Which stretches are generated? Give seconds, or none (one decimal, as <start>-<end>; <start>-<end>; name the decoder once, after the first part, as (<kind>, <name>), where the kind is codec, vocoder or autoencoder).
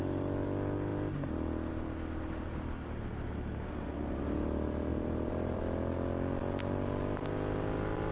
4.9-5.6 (vocoder, BigVGAN v2)